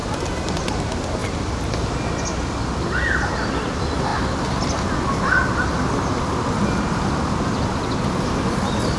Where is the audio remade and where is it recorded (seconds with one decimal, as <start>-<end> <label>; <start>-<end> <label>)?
0.0-9.0 recorded